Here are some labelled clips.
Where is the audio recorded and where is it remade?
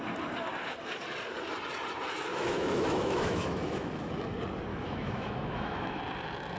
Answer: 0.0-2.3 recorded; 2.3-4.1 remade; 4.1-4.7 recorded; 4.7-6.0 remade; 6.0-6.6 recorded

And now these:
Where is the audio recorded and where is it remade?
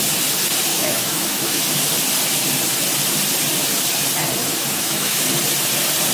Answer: 0.0-0.7 recorded; 0.7-1.6 remade; 1.6-4.4 recorded; 4.4-5.3 remade; 5.3-6.1 recorded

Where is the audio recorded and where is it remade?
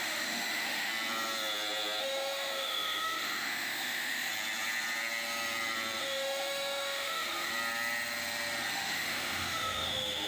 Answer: 0.0-0.9 remade; 0.9-2.0 recorded; 2.0-4.3 remade; 4.3-6.0 recorded; 6.0-7.5 remade; 7.5-8.7 recorded; 8.7-10.3 remade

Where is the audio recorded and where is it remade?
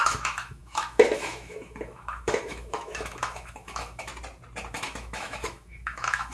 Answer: 0.0-4.1 remade; 4.1-4.7 recorded; 4.7-6.3 remade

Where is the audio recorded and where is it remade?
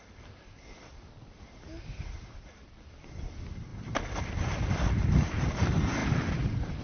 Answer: 0.0-6.8 recorded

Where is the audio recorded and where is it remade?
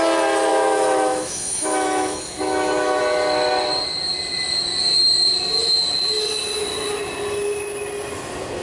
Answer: 0.0-0.5 recorded; 0.5-3.0 remade; 3.0-8.6 recorded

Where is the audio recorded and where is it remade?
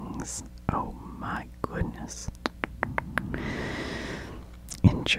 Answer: 0.0-5.2 recorded